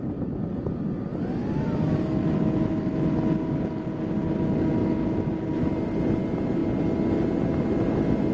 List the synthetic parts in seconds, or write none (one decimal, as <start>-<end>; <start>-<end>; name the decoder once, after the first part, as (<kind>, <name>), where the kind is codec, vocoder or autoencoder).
none